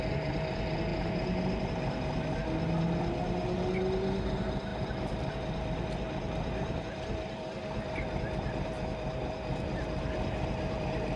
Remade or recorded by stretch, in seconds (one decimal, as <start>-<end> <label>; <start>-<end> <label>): 0.0-0.9 recorded; 0.9-1.6 remade; 1.6-11.2 recorded